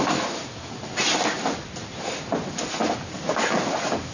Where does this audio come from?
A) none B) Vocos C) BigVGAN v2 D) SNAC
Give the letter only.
A